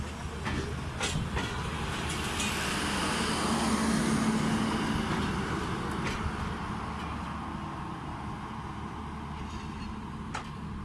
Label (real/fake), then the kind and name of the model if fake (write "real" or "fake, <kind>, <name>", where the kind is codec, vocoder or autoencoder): real